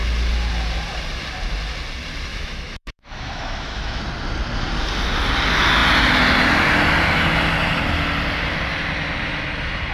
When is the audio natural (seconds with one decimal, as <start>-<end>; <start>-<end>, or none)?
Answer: 0.0-2.3; 4.0-9.9